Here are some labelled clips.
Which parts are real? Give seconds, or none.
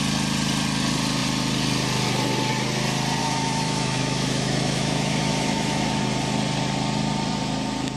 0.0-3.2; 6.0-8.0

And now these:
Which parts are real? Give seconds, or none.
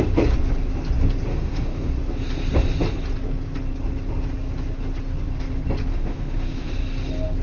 0.0-1.3; 1.9-5.9; 6.7-7.4